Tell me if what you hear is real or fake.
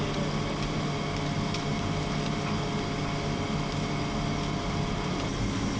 real